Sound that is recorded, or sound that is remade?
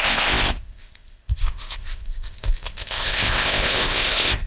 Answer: remade